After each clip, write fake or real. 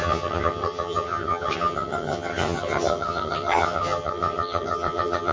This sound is fake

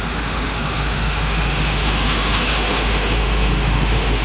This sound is fake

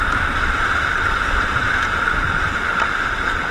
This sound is real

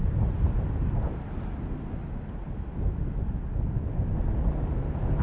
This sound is real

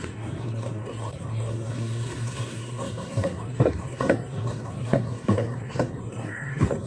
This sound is fake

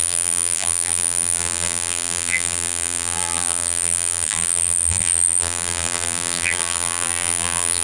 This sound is fake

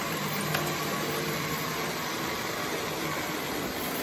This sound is real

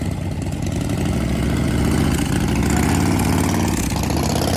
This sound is real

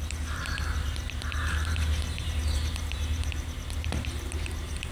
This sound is fake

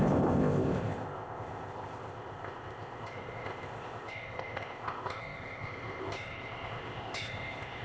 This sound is fake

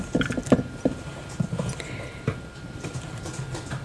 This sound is fake